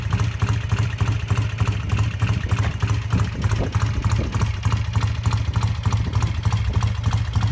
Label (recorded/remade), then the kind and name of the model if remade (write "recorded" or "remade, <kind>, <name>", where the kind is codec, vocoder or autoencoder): recorded